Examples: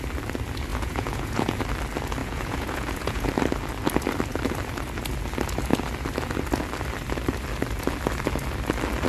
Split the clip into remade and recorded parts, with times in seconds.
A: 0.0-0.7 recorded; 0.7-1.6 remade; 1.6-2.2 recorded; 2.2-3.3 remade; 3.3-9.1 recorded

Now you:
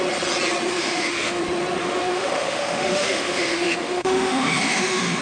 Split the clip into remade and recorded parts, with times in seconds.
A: 0.0-0.7 recorded; 0.7-1.4 remade; 1.4-1.8 recorded; 1.8-5.2 remade

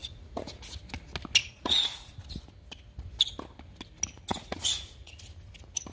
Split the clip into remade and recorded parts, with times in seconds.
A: 0.0-0.6 remade; 0.6-1.4 recorded; 1.4-2.2 remade; 2.2-4.3 recorded; 4.3-5.1 remade; 5.1-5.9 recorded

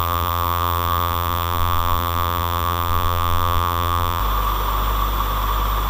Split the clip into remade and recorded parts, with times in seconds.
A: 0.0-4.2 remade; 4.2-5.9 recorded

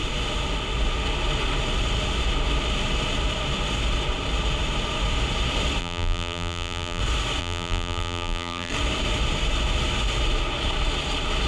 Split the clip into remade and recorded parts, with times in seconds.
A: 0.0-5.8 recorded; 5.8-7.0 remade; 7.0-7.4 recorded; 7.4-8.7 remade; 8.7-11.5 recorded